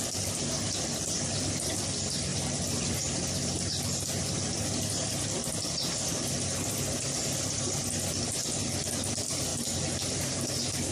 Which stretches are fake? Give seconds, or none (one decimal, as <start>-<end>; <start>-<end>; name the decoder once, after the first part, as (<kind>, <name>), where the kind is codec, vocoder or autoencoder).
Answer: none